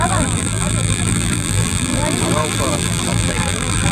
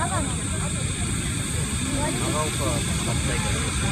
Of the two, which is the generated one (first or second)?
first